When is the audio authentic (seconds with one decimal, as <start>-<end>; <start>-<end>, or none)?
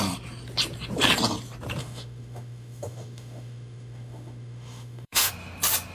0.0-1.8; 5.3-5.9